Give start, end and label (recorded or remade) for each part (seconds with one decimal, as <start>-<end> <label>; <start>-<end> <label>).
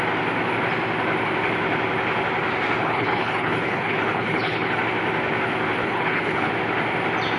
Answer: 0.0-2.8 recorded; 2.8-4.8 remade; 4.8-5.8 recorded; 5.8-6.5 remade; 6.5-7.4 recorded